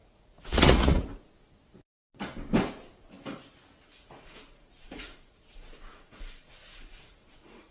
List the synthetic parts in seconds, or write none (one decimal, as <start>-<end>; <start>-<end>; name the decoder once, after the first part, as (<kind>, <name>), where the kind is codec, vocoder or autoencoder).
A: 0.0-1.1 (vocoder, Vocos); 3.8-7.7